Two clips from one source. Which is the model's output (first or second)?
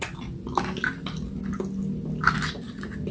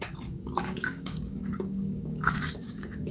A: second